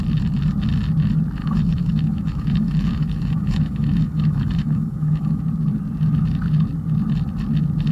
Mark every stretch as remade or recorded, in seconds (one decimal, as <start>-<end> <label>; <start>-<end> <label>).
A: 0.0-1.4 recorded; 1.4-5.4 remade; 5.4-7.9 recorded